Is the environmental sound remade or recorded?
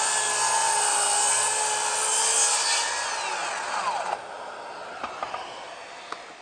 recorded